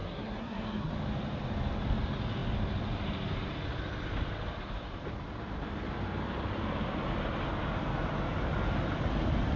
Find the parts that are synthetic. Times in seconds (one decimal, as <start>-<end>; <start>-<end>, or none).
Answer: 0.0-0.9